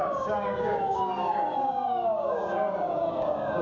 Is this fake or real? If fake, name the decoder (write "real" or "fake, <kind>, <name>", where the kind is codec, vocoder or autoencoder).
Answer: fake, codec, DAC